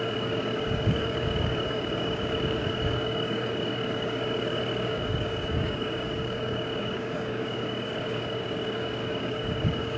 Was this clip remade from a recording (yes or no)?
yes